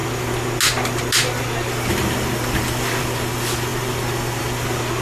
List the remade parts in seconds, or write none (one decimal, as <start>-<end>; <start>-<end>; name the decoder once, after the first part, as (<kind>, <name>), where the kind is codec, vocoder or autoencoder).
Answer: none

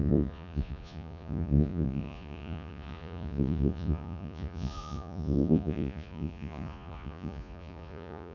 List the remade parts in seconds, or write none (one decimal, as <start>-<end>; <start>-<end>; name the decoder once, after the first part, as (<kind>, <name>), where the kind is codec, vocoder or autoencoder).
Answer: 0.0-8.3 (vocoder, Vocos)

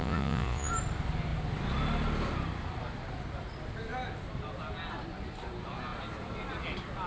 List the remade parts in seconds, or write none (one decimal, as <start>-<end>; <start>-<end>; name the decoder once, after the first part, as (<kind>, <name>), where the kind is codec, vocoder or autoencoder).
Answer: 0.0-0.7 (vocoder, Vocos)